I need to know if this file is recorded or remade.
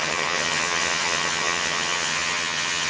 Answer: remade